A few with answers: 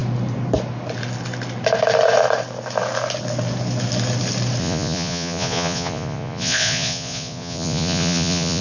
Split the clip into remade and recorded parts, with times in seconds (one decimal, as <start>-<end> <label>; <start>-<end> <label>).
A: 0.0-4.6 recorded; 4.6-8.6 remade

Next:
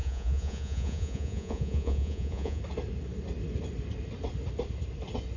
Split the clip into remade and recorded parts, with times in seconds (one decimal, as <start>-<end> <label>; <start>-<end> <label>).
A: 0.0-2.6 remade; 2.6-5.4 recorded

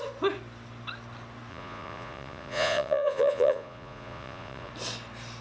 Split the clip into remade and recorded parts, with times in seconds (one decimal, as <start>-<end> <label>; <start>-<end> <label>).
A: 0.0-1.5 recorded; 1.5-4.7 remade; 4.7-5.4 recorded

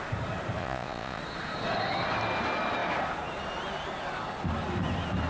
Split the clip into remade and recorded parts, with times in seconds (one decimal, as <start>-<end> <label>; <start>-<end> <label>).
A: 0.0-0.6 recorded; 0.6-1.2 remade; 1.2-5.3 recorded

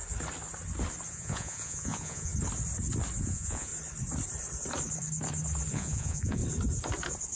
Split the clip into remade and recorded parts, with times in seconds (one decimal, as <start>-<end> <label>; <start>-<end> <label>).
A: 0.0-1.1 recorded; 1.1-2.3 remade; 2.3-3.2 recorded; 3.2-3.7 remade; 3.7-5.7 recorded; 5.7-6.4 remade; 6.4-7.4 recorded

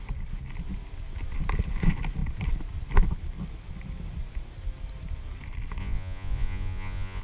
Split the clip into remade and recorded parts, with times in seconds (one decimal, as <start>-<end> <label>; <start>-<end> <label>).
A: 0.0-5.8 recorded; 5.8-7.2 remade

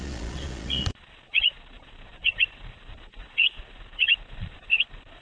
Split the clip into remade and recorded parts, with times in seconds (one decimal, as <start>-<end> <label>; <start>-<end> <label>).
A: 0.0-5.2 remade